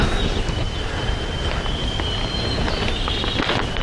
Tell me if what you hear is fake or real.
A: real